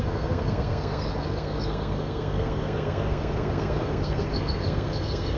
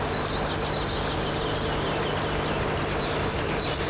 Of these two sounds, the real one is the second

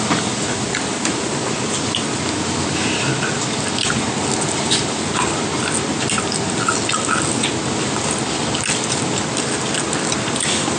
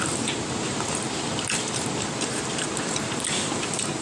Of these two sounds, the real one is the first